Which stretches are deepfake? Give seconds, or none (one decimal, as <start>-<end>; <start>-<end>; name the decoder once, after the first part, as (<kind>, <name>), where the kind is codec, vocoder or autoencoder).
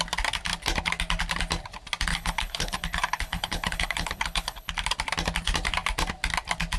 2.1-4.7 (codec, HILCodec)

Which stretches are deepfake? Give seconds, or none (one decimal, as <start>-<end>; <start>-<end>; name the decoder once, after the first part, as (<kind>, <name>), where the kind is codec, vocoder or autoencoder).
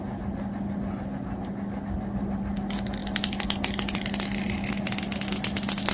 none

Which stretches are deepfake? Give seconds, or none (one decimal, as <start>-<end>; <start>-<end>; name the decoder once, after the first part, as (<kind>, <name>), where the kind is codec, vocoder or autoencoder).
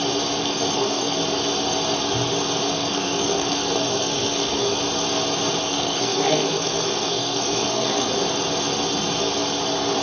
0.4-1.2 (codec, SNAC); 2.7-4.8; 5.6-8.1